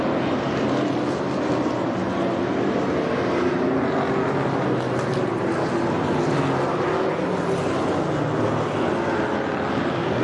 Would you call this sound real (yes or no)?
yes